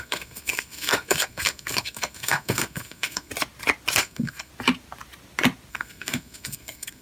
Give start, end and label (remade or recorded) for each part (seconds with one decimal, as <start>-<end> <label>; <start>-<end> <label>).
0.0-3.3 remade; 3.3-4.0 recorded; 4.0-4.5 remade; 4.5-5.7 recorded; 5.7-7.0 remade